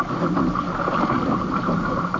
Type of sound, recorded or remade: recorded